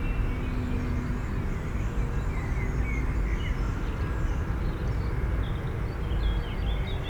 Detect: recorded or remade recorded